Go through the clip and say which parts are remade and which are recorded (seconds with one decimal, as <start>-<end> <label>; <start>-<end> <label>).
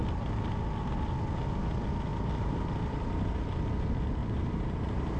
0.0-2.1 recorded; 2.1-2.6 remade; 2.6-4.2 recorded; 4.2-5.2 remade